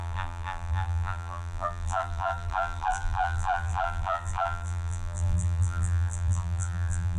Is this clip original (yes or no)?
no